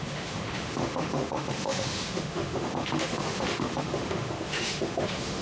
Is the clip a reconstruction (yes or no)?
yes